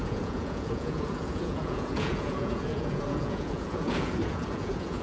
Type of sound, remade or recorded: remade